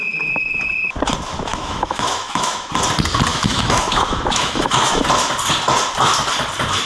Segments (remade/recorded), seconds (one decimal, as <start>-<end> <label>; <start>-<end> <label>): 0.0-1.5 recorded; 1.5-2.7 remade; 2.7-3.3 recorded; 3.3-4.9 remade; 4.9-6.9 recorded

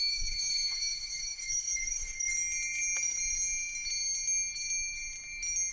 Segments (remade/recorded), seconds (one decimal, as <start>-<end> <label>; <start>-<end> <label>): 0.0-2.3 remade; 2.3-5.7 recorded

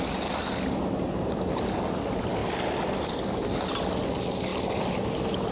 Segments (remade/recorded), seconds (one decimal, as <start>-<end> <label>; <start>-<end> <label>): 0.0-5.5 recorded

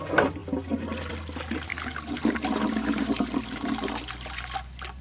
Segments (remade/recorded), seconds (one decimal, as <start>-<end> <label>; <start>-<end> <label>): 0.0-0.4 recorded; 0.4-1.1 remade; 1.1-1.7 recorded; 1.7-5.0 remade

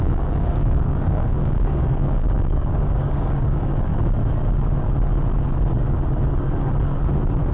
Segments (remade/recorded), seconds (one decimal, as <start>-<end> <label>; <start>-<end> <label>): 0.0-3.9 remade; 3.9-7.5 recorded

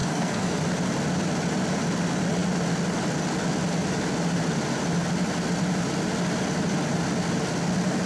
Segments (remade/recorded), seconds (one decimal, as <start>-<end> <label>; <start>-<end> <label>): 0.0-0.6 remade; 0.6-8.1 recorded

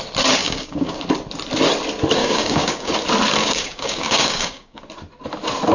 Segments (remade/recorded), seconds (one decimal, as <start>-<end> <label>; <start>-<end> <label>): 0.0-0.4 recorded; 0.4-1.0 remade; 1.0-2.2 recorded; 2.2-2.9 remade; 2.9-3.4 recorded; 3.4-4.8 remade; 4.8-5.7 recorded

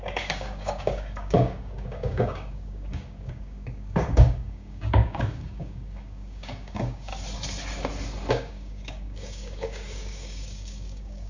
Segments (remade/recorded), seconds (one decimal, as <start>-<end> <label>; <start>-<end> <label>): 0.0-7.1 remade; 7.1-8.3 recorded; 8.3-11.3 remade